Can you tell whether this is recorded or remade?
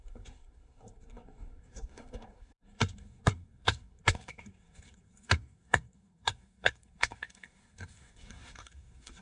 remade